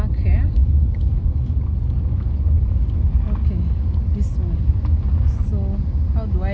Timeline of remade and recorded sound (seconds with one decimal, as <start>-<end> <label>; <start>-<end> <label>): 0.0-6.5 recorded

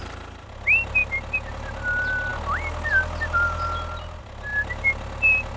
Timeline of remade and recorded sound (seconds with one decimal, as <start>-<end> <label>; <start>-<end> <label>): 0.0-5.6 recorded

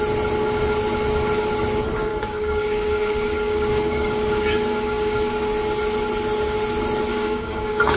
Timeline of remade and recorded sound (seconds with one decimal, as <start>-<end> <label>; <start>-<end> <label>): 0.0-2.1 recorded; 2.1-5.3 remade; 5.3-7.1 recorded; 7.1-8.0 remade

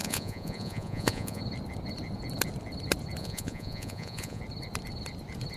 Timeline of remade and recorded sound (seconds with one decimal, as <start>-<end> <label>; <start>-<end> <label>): 0.0-1.4 remade; 1.4-3.2 recorded; 3.2-4.4 remade; 4.4-5.6 recorded

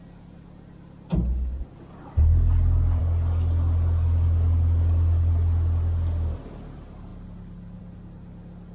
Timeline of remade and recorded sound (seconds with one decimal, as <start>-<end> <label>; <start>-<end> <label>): 0.0-8.7 recorded

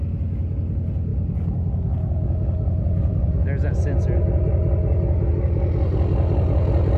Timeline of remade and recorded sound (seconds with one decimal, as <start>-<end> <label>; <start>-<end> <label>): 0.0-7.0 recorded